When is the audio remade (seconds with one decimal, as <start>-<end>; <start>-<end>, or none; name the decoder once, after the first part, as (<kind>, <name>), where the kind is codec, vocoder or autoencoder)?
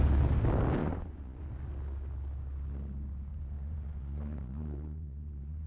0.8-1.4 (vocoder, Vocos); 3.3-5.7